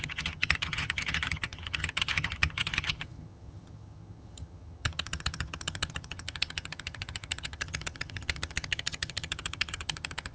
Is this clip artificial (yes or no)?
yes